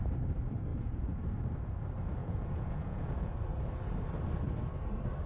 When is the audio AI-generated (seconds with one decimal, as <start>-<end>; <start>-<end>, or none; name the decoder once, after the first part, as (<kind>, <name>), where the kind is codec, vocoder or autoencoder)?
0.7-1.2 (vocoder, Vocos); 2.2-3.3